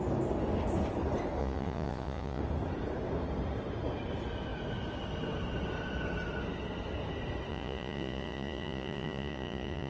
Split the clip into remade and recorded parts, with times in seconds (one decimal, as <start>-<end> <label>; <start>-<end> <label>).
0.0-1.4 recorded; 1.4-2.4 remade; 2.4-7.5 recorded; 7.5-9.9 remade